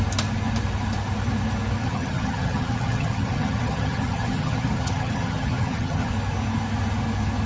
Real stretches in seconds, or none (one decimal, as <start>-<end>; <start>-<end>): 0.0-1.8; 6.1-7.5